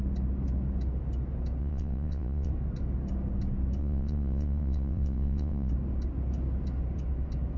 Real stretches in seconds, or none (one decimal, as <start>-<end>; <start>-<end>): 0.0-1.6; 2.5-3.8; 5.7-7.6